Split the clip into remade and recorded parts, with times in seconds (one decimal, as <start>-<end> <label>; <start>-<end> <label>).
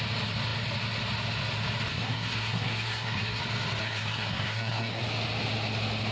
0.0-1.9 recorded; 1.9-3.4 remade; 3.4-3.8 recorded; 3.8-5.0 remade; 5.0-6.1 recorded